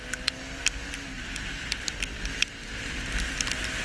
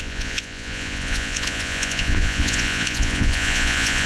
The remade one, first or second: second